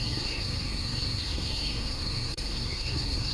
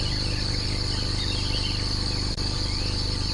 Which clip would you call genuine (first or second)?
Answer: second